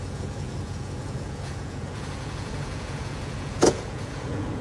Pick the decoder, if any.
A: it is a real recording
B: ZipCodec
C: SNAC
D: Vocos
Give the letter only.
D